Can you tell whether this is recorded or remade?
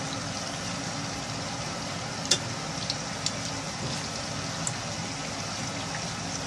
recorded